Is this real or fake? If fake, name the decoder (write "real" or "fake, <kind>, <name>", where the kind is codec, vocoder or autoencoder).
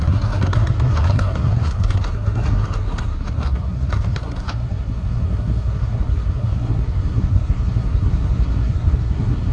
fake, codec, SNAC